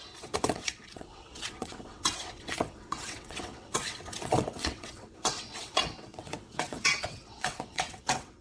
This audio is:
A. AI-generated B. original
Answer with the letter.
A